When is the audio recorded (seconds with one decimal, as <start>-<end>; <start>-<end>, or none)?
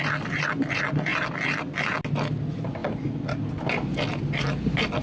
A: 0.0-5.0